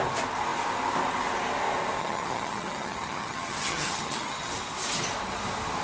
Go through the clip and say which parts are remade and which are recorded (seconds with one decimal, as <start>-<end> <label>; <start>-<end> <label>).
0.0-2.0 recorded; 2.0-4.5 remade; 4.5-5.8 recorded